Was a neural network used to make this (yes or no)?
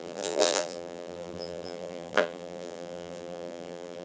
yes